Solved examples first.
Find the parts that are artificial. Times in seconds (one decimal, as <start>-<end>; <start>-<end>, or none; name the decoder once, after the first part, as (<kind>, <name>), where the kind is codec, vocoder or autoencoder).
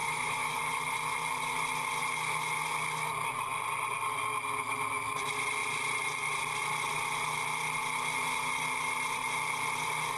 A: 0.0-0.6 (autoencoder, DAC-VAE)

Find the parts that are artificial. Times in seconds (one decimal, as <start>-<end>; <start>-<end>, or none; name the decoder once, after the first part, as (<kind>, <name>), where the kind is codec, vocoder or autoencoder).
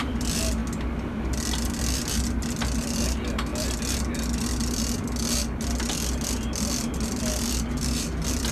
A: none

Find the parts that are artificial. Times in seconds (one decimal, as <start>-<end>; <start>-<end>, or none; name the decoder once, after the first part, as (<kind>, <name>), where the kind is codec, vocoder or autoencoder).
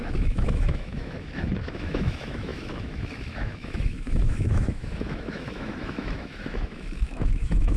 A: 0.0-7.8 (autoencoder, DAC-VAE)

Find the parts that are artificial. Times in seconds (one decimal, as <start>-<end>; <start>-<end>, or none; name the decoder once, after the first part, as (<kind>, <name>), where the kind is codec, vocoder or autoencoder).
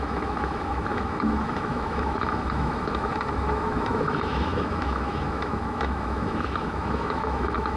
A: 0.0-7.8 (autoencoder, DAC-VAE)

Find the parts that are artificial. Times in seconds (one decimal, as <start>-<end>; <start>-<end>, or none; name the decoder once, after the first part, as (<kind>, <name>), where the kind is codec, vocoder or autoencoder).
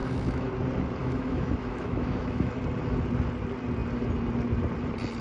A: 0.0-0.5 (autoencoder, DAC-VAE); 1.0-2.5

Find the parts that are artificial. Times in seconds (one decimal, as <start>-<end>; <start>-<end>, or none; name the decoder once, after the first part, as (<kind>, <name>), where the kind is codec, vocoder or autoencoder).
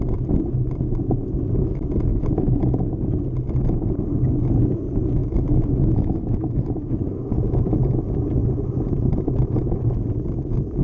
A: 2.1-2.7 (autoencoder, DAC-VAE); 5.2-7.3